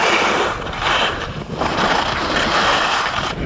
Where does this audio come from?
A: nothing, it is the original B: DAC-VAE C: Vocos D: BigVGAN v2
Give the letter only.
A